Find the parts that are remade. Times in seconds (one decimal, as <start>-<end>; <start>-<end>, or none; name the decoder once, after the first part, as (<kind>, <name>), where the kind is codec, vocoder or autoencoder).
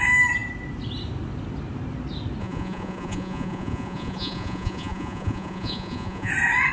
2.4-6.3 (vocoder, Vocos)